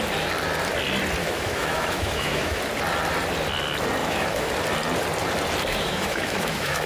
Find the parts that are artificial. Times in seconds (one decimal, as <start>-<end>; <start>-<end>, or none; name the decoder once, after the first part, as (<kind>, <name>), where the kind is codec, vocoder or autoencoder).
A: 1.2-2.6 (autoencoder, DAC-VAE); 4.0-4.5; 5.7-6.9